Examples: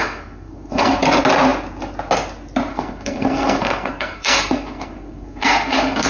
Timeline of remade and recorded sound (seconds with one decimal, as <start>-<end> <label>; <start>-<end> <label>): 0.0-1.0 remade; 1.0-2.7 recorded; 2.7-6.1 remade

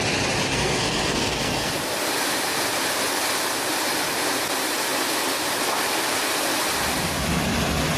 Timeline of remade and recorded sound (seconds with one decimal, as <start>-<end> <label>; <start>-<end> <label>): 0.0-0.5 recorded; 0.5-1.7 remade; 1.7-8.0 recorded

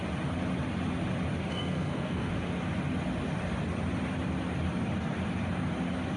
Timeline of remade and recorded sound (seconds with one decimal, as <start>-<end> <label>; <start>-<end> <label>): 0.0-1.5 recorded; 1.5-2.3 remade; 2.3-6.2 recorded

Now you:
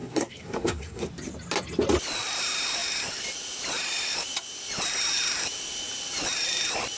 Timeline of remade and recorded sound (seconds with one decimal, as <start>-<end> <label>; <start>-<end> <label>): 0.0-1.1 remade; 1.1-7.0 recorded

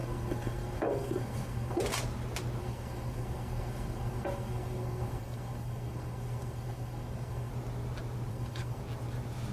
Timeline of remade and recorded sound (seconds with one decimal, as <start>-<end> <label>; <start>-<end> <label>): 0.0-1.8 remade; 1.8-2.6 recorded; 2.6-7.5 remade; 7.5-8.3 recorded; 8.3-8.8 remade; 8.8-9.5 recorded

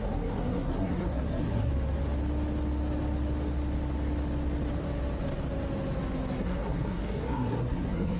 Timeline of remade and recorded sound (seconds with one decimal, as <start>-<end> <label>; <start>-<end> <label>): 0.0-1.7 remade; 1.7-6.4 recorded; 6.4-8.2 remade

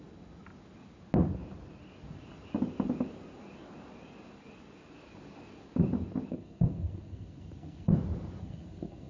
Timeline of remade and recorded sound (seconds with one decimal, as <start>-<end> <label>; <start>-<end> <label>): 0.0-6.3 recorded; 6.3-7.9 remade; 7.9-8.4 recorded; 8.4-9.1 remade

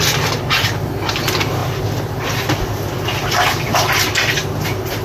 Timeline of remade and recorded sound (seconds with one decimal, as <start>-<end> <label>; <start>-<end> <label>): 0.0-5.0 recorded